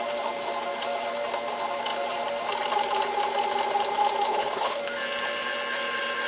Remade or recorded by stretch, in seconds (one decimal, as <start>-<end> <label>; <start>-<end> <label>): 0.0-4.3 recorded; 4.3-4.8 remade; 4.8-6.3 recorded